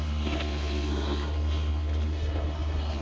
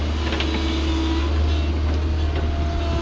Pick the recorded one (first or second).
second